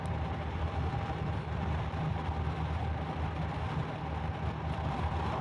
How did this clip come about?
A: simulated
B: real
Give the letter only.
A